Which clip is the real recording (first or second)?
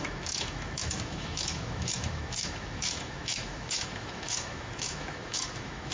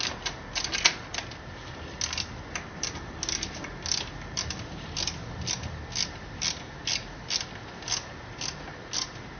second